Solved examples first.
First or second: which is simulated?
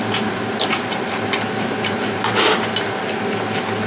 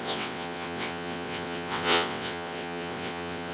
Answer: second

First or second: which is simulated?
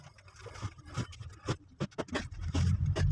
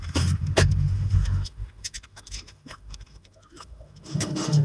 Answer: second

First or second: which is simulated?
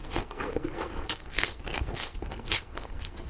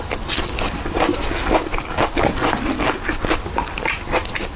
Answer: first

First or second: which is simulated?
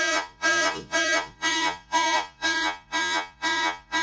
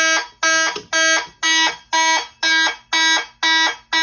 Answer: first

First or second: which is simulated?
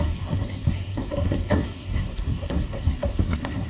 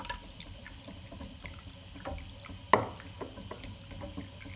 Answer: first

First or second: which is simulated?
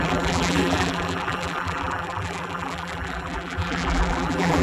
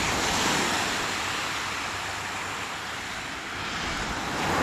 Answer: first